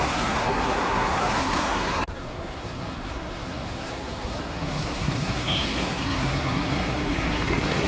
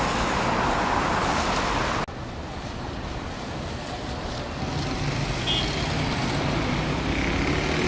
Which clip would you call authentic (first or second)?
second